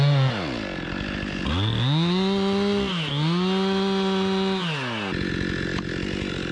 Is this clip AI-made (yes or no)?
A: no